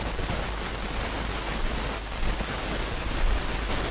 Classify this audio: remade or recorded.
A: recorded